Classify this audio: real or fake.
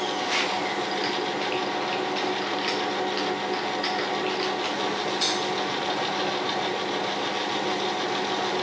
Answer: real